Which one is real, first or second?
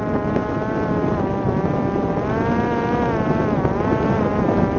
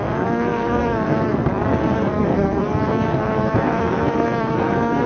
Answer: first